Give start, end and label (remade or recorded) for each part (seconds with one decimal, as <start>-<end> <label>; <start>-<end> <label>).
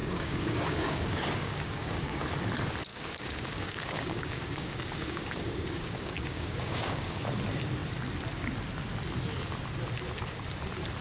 0.0-2.2 remade; 2.2-2.9 recorded; 2.9-7.2 remade; 7.2-11.0 recorded